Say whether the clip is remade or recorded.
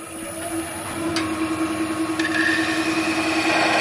recorded